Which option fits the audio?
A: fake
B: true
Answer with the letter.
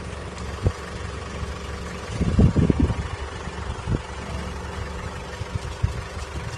B